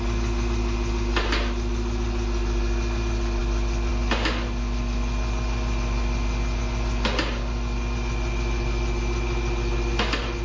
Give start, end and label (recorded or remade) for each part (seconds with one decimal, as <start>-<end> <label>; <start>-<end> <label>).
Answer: 0.0-10.4 recorded